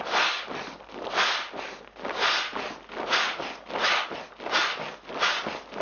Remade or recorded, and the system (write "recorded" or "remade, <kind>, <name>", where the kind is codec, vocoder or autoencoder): recorded